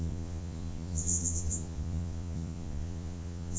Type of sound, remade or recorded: remade